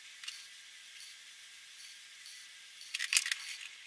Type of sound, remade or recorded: recorded